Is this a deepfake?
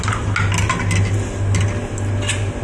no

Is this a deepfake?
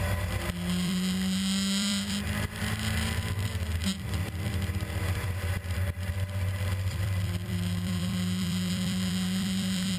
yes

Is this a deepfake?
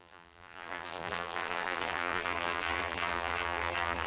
yes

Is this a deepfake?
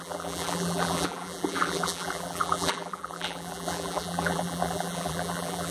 yes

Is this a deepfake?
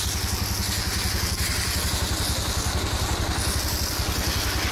no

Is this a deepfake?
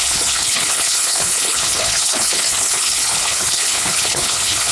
yes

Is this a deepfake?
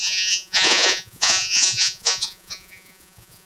yes